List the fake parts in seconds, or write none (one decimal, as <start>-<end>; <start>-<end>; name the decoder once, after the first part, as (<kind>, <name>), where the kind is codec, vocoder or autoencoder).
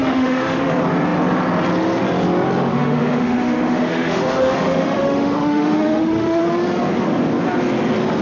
0.0-0.7 (autoencoder, DAC-VAE); 2.7-6.4